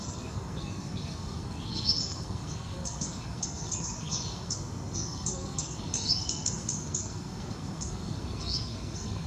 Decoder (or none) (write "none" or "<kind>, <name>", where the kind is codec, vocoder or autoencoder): codec, SNAC